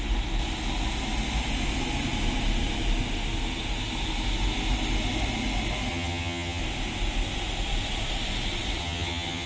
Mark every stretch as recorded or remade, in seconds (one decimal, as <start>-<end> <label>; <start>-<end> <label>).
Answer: 0.0-5.9 recorded; 5.9-6.6 remade; 6.6-8.8 recorded; 8.8-9.5 remade